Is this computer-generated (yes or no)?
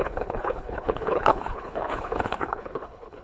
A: yes